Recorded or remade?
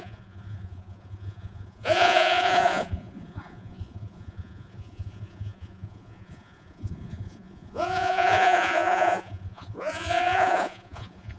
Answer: remade